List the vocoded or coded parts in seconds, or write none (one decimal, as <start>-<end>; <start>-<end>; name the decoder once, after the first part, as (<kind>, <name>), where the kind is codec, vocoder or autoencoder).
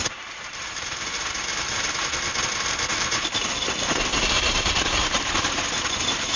0.0-1.2 (vocoder, BigVGAN v2); 2.9-5.3